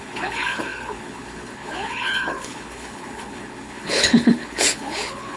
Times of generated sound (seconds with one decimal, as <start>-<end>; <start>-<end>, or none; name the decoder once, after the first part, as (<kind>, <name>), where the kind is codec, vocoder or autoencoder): 0.0-5.4 (codec, HILCodec)